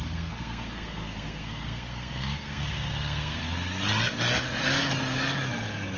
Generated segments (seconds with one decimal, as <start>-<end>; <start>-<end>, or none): 0.0-3.4